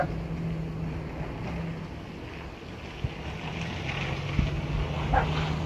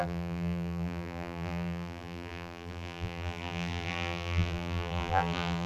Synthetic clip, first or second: second